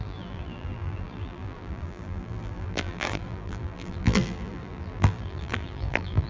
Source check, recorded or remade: remade